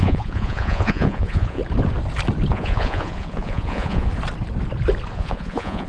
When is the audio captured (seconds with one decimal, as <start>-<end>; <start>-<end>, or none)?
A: 1.6-2.5; 4.1-5.1